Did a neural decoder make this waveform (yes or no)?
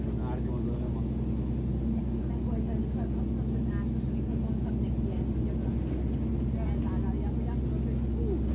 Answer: no